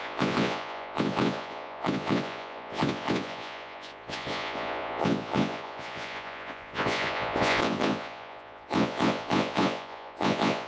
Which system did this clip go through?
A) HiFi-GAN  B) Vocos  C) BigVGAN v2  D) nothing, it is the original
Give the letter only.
B